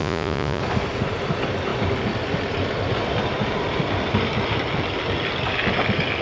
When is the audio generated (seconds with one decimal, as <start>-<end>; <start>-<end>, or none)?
0.0-0.6

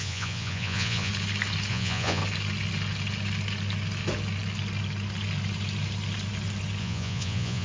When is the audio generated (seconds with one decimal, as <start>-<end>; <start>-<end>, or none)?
0.0-1.1; 1.7-2.2; 6.8-7.6

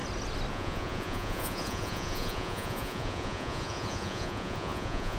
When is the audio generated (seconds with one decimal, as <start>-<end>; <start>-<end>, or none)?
0.5-5.2

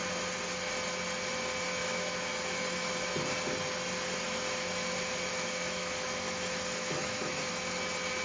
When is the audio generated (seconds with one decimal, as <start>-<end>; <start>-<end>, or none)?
1.8-3.1; 5.3-7.5

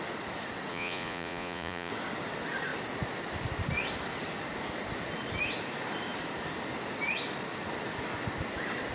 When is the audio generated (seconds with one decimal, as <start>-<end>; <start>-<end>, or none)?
0.7-1.9